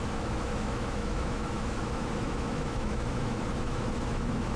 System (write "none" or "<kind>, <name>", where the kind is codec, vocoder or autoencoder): autoencoder, DAC-VAE